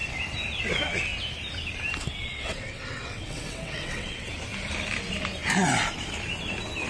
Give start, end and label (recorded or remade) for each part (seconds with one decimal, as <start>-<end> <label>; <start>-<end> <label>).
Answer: 0.0-2.3 recorded; 2.3-4.3 remade; 4.3-6.9 recorded

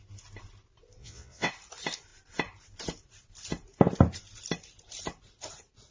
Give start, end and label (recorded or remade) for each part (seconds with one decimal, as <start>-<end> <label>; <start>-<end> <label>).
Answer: 0.0-1.0 recorded; 1.0-1.5 remade; 1.5-5.9 recorded